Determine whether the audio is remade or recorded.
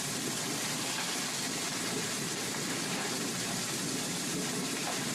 recorded